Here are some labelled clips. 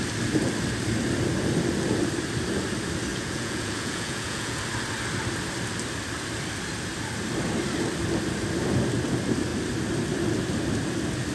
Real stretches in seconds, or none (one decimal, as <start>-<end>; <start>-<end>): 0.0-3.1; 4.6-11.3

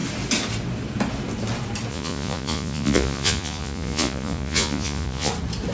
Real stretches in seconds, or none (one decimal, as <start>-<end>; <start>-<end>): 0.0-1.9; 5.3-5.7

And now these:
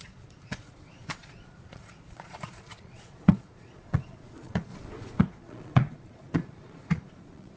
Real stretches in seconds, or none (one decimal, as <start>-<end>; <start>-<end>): none

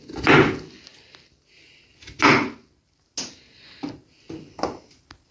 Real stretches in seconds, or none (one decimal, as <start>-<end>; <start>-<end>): 0.0-5.3

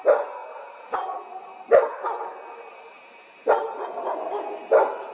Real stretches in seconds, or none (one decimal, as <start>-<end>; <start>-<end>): 0.0-5.1

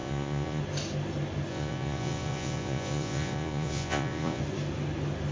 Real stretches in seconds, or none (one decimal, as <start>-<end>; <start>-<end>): 0.6-1.5; 4.4-5.3

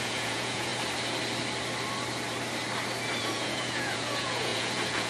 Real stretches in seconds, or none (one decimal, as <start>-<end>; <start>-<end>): 0.7-3.2